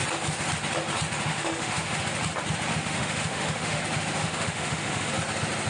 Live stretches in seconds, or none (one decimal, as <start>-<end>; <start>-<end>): 0.0-1.3; 2.0-2.7; 3.8-4.2; 5.1-5.7